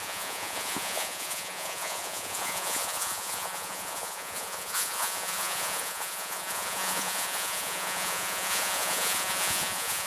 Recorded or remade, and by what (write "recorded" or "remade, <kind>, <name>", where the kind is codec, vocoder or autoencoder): remade, vocoder, Vocos